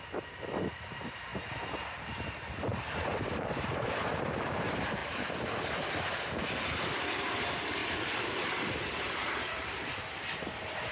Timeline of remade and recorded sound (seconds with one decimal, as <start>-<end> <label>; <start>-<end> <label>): 0.0-2.7 recorded; 2.7-4.1 remade; 4.1-7.8 recorded; 7.8-9.7 remade; 9.7-10.9 recorded